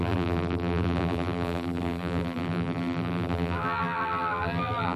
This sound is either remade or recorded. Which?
remade